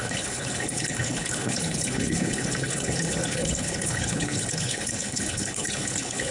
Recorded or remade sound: remade